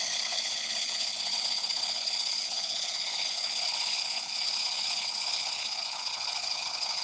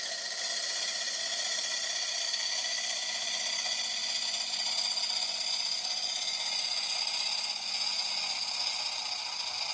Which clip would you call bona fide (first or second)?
second